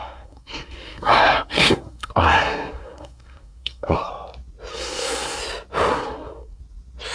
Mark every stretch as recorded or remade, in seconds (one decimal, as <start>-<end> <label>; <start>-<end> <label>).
0.0-4.1 remade; 4.1-4.7 recorded; 4.7-5.4 remade; 5.4-5.9 recorded; 5.9-6.6 remade; 6.6-7.1 recorded